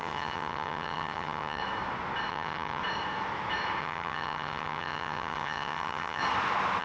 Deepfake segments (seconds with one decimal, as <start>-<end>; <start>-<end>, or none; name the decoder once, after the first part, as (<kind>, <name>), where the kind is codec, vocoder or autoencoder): 0.0-1.6 (vocoder, HiFi-GAN); 2.3-2.8; 3.8-6.2